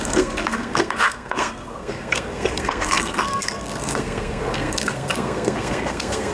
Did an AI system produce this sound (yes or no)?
yes